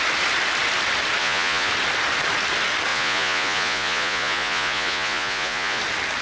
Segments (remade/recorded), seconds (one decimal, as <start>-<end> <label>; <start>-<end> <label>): 0.0-1.2 recorded; 1.2-1.7 remade; 1.7-2.9 recorded; 2.9-5.8 remade; 5.8-6.2 recorded